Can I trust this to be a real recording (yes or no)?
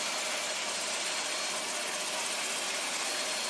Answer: yes